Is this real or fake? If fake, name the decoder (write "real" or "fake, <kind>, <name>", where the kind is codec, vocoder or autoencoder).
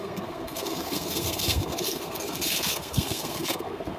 fake, codec, SNAC